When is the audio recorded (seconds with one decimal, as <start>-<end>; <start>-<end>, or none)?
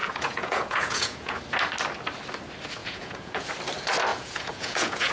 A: 1.4-2.8; 3.5-4.1